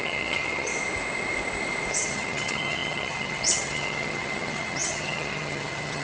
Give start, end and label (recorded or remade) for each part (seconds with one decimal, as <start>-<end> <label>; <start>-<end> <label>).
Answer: 0.0-0.7 remade; 0.7-1.9 recorded; 1.9-6.0 remade